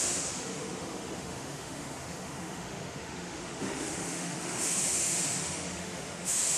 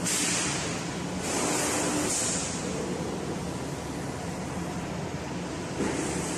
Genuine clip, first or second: second